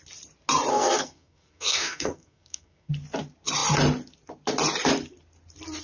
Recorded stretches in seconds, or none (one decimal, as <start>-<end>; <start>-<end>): 0.0-0.7; 2.9-5.8